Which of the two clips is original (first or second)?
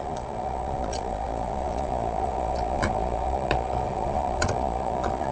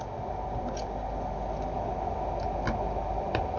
second